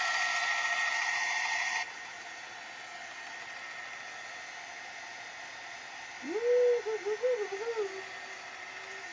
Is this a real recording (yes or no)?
yes